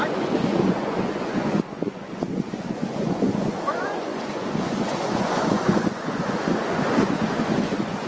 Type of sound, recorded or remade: remade